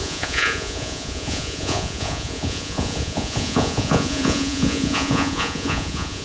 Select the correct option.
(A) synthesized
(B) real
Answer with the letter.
A